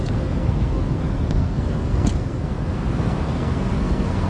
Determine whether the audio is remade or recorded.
remade